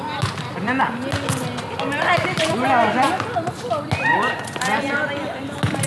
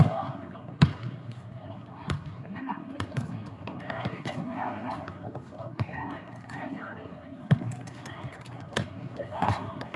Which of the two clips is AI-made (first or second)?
second